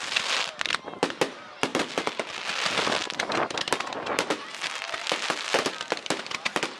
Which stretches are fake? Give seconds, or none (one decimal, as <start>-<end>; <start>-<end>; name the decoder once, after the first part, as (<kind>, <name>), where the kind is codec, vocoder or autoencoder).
none